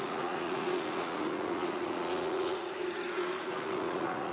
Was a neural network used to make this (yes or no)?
yes